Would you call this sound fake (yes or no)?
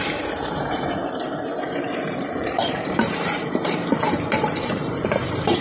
yes